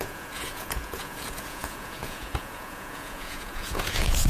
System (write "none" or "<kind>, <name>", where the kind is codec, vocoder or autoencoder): vocoder, Vocos